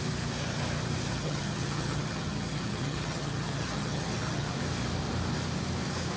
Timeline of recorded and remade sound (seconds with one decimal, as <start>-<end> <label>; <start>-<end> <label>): 0.0-1.1 recorded; 1.1-4.5 remade; 4.5-6.2 recorded